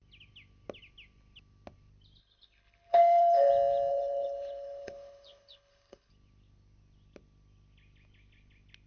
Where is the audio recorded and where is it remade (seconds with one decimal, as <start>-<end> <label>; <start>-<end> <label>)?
0.0-2.2 recorded; 2.2-3.5 remade; 3.5-3.9 recorded; 3.9-6.1 remade; 6.1-8.9 recorded